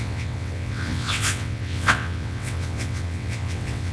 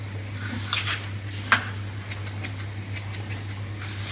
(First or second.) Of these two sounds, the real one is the second